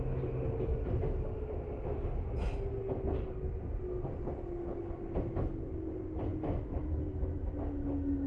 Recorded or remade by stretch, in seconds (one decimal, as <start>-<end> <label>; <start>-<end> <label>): 0.0-8.3 recorded